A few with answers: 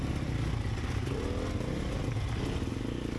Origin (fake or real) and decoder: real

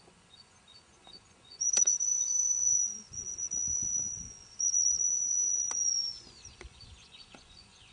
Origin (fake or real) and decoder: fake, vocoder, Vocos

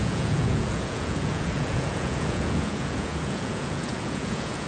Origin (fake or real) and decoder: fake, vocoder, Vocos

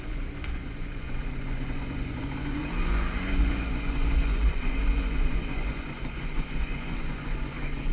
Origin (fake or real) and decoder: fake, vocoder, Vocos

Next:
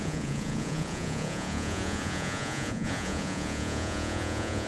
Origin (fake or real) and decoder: fake, vocoder, Vocos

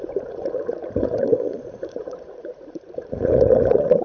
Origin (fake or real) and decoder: fake, vocoder, Vocos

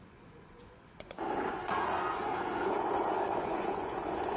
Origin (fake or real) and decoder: fake, vocoder, Vocos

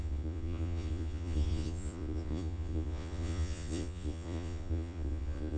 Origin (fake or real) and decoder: fake, vocoder, Vocos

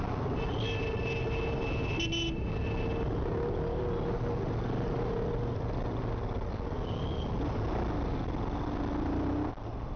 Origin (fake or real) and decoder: real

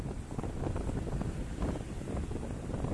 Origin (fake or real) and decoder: real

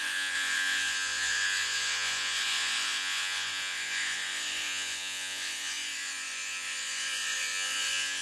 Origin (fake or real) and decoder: fake, vocoder, Vocos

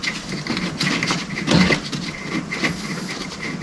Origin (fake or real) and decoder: real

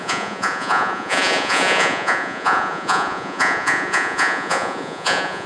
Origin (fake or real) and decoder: fake, vocoder, Vocos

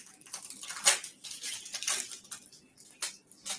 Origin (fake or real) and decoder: real